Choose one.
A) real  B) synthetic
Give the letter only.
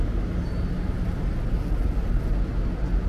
A